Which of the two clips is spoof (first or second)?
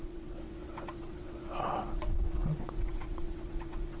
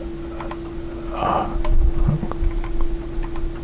first